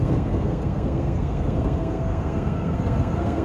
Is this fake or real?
fake